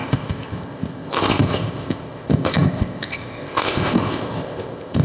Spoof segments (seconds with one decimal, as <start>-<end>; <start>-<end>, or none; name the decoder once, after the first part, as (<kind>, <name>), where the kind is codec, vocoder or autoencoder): 0.0-5.0 (codec, ZipCodec)